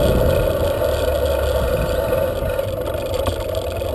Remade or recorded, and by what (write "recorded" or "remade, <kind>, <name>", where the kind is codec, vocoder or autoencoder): recorded